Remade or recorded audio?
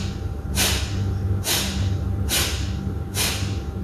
recorded